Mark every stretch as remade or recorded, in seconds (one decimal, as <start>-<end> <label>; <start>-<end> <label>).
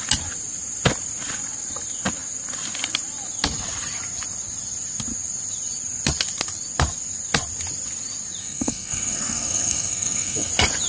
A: 0.0-8.4 recorded; 8.4-10.5 remade; 10.5-10.9 recorded